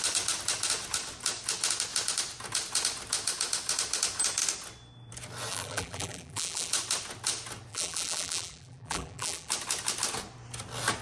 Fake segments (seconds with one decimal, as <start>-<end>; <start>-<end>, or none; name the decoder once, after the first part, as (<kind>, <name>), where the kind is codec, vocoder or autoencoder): 5.5-6.7 (vocoder, BigVGAN v2); 7.7-9.5

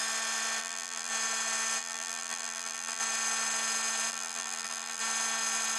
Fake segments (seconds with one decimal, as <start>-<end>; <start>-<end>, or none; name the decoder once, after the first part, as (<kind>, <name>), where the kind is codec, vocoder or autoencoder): 0.6-1.1 (vocoder, BigVGAN v2); 1.8-3.0; 4.1-5.0